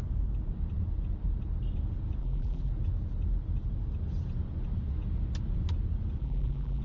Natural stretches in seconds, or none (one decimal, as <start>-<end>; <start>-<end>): 0.0-2.2; 2.7-6.2